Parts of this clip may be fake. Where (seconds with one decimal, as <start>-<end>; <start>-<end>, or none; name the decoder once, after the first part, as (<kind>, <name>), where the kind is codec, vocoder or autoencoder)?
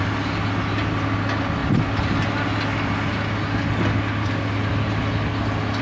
none